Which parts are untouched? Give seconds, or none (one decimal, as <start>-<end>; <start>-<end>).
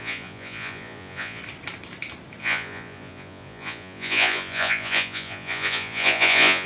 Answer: 1.4-2.4